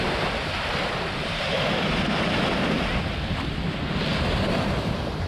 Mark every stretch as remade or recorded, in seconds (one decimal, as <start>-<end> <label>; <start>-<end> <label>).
0.0-1.2 recorded; 1.2-2.8 remade; 2.8-4.1 recorded; 4.1-5.3 remade

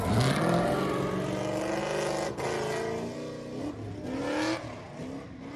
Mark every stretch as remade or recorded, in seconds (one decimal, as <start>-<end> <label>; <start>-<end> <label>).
0.0-5.6 recorded

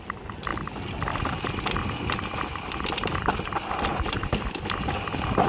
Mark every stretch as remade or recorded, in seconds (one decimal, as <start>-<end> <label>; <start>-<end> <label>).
0.0-2.5 recorded; 2.5-3.5 remade; 3.5-3.9 recorded; 3.9-4.4 remade; 4.4-5.5 recorded

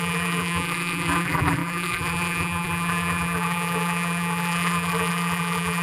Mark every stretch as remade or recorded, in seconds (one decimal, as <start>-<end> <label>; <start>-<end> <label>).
0.0-5.8 remade

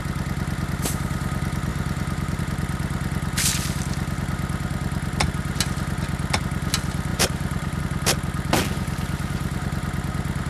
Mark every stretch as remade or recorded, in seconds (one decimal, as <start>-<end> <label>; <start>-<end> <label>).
0.0-1.7 recorded; 1.7-2.4 remade; 2.4-7.1 recorded; 7.1-7.8 remade; 7.8-10.5 recorded

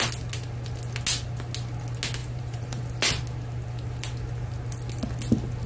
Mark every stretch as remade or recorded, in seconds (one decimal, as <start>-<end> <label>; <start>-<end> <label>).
0.0-2.2 recorded; 2.2-2.8 remade; 2.8-5.7 recorded

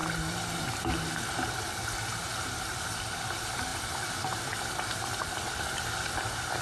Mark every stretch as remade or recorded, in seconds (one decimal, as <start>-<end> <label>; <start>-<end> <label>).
0.0-3.7 recorded; 3.7-5.0 remade; 5.0-6.6 recorded